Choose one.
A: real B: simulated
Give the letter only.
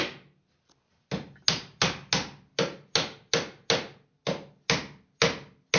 A